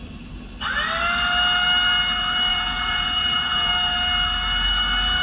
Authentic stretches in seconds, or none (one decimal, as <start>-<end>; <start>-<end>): 0.0-2.5; 3.7-5.2